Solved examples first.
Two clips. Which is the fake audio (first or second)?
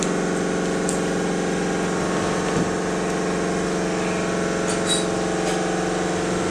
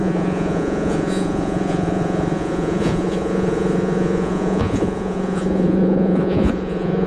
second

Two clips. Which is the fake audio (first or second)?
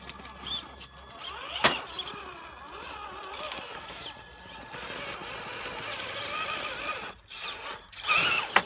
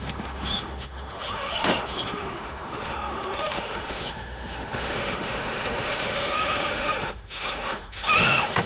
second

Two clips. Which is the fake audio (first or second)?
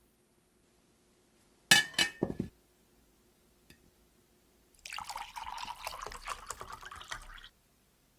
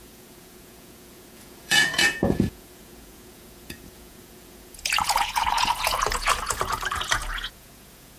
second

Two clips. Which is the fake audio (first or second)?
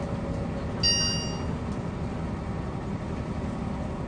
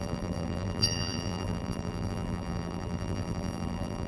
second